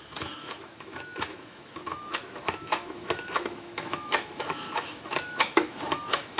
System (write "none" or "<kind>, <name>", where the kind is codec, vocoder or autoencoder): autoencoder, DAC-VAE